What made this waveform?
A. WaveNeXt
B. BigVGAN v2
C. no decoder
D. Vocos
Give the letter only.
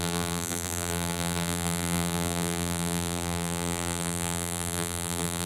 B